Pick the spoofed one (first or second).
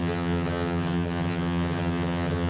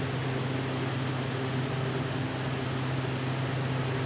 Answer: first